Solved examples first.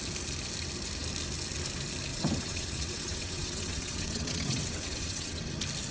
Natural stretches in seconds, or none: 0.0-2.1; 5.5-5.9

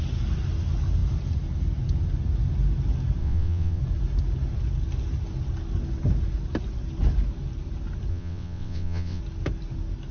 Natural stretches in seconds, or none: 0.0-3.2; 3.8-8.1; 9.2-10.1

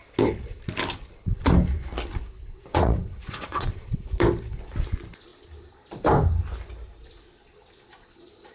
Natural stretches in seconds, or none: 0.0-2.7; 4.0-8.5

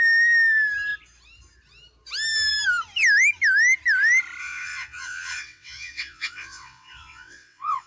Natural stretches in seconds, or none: 0.0-4.4

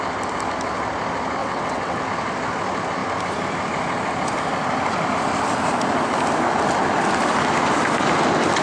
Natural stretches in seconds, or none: 0.0-1.4; 2.0-8.6

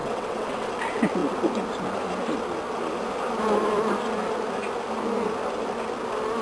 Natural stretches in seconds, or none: 0.7-6.4

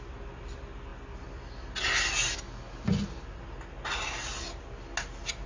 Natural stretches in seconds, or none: 0.0-5.5

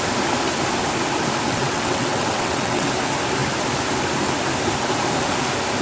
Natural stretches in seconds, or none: 0.0-1.5; 2.9-5.8